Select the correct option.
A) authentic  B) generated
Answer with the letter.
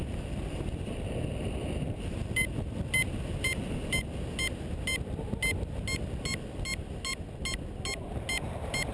A